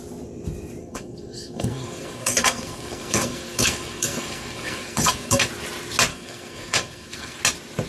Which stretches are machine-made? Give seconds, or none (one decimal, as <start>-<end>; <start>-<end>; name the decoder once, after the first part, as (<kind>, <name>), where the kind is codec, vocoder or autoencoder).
0.8-5.5 (codec, SNAC); 6.1-7.4